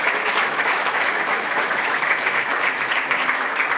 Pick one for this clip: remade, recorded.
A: remade